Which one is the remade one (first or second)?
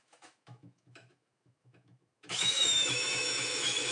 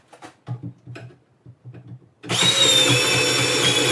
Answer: first